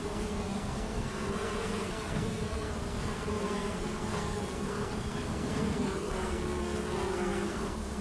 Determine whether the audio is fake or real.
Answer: fake